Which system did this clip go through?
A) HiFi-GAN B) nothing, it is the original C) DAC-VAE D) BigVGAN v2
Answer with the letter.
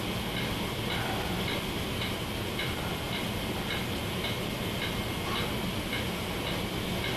B